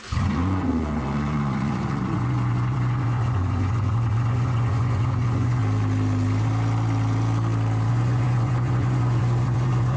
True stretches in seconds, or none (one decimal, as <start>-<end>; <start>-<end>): 5.6-7.9